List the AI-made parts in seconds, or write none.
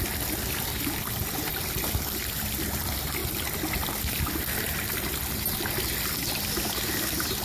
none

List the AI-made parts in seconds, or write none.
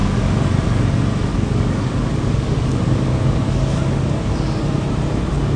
0.0-0.8 (codec, DAC); 1.3-4.7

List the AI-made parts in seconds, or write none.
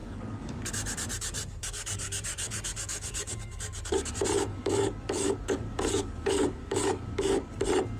0.0-0.6 (codec, DAC); 1.6-4.1; 4.5-7.6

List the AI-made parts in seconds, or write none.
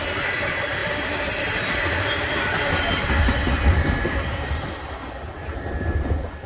none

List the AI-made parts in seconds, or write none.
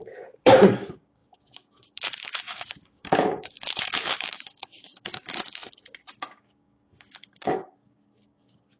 0.0-5.6 (codec, DAC); 6.2-8.8